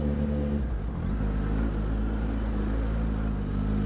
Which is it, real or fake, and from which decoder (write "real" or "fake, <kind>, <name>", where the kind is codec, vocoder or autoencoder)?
real